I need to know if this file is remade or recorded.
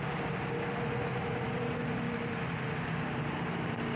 recorded